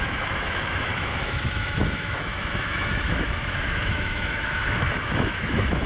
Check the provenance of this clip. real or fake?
fake